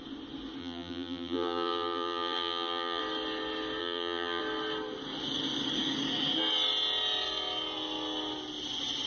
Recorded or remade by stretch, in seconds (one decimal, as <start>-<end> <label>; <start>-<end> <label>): 0.0-0.6 recorded; 0.6-3.0 remade; 3.0-3.8 recorded; 3.8-4.4 remade; 4.4-9.1 recorded